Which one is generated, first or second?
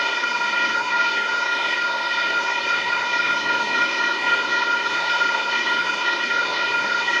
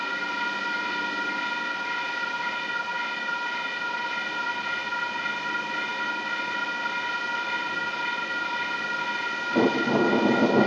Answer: first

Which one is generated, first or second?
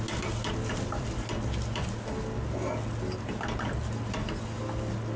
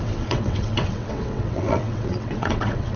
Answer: second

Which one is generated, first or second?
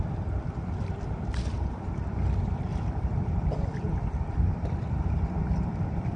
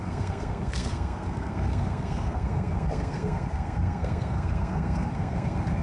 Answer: second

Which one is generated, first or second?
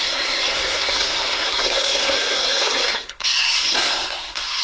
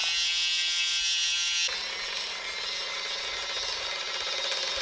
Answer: first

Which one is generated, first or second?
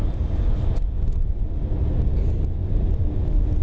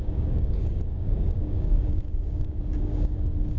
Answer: second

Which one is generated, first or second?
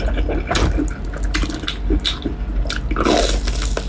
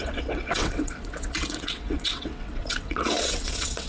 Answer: second